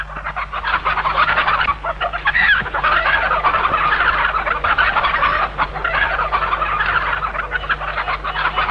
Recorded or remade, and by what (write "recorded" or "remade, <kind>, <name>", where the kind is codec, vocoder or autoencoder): recorded